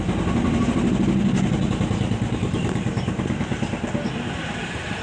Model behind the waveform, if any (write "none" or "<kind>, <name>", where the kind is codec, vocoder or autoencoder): none